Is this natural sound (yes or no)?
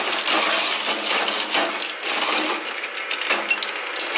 yes